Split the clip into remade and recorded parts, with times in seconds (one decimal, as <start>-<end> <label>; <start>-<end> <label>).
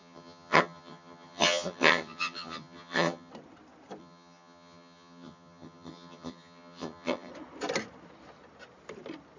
0.0-3.3 remade; 3.3-4.0 recorded; 4.0-7.3 remade; 7.3-9.4 recorded